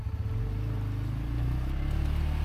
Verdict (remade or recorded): recorded